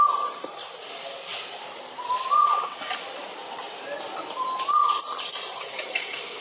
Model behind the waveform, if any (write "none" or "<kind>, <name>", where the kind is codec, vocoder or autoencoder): none